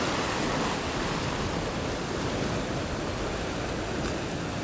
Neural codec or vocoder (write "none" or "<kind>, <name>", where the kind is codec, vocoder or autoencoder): none